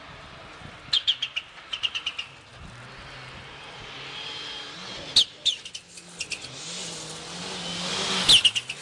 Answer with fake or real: real